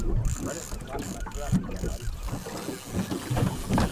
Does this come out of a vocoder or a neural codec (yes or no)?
no